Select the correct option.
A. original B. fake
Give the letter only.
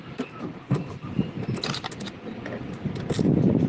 A